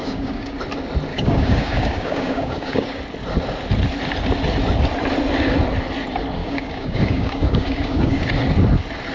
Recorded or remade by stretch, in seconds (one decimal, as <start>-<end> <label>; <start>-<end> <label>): 0.0-0.6 remade; 0.6-1.1 recorded; 1.1-3.0 remade; 3.0-6.4 recorded; 6.4-8.2 remade; 8.2-9.1 recorded